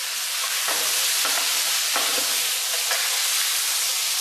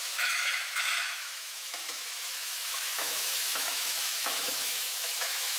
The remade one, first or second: second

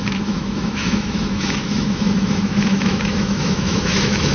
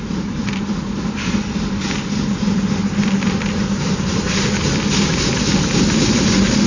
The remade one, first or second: first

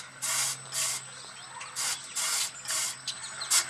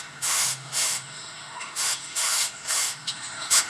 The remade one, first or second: second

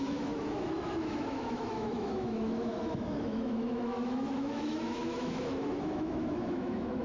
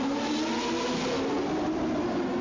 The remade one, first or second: first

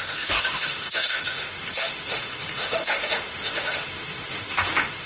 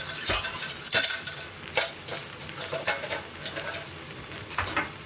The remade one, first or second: first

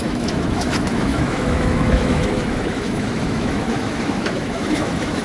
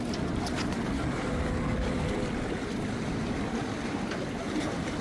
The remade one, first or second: first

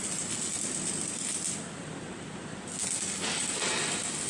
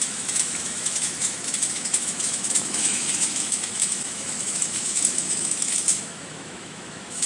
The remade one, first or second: second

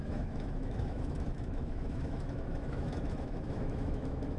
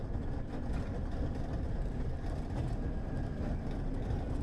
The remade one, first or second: first